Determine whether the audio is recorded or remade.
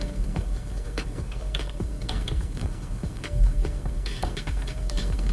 remade